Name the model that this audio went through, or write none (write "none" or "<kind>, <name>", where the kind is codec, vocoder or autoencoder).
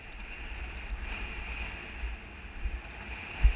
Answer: none